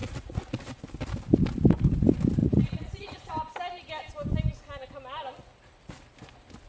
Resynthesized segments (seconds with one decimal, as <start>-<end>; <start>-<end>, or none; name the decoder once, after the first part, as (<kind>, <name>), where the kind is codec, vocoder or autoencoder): 0.0-0.8 (vocoder, Vocos); 2.4-3.3